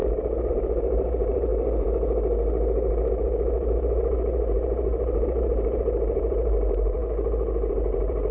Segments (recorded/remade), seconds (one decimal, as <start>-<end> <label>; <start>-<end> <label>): 0.0-1.5 remade; 1.5-3.1 recorded; 3.1-7.0 remade; 7.0-7.7 recorded; 7.7-8.3 remade